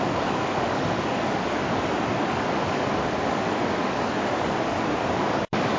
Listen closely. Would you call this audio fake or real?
fake